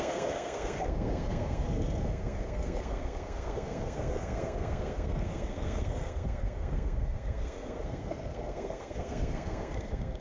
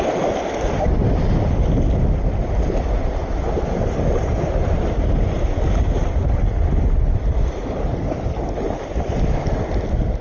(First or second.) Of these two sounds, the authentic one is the second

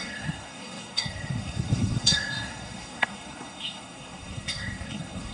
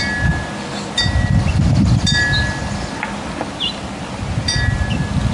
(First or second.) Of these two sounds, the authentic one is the second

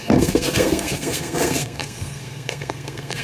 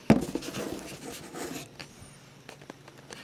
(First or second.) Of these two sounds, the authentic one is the second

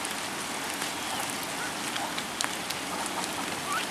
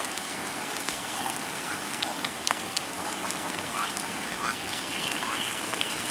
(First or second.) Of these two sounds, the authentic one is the first